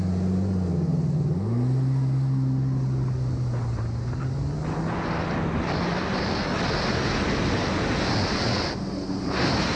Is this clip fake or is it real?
real